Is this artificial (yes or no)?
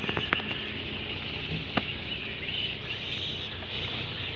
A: no